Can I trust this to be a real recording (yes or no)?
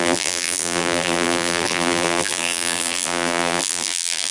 no